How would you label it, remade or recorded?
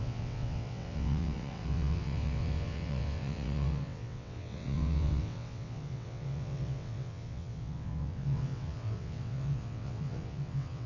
remade